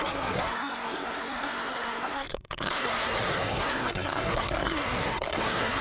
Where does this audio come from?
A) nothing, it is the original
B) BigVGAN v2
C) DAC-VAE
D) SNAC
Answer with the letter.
D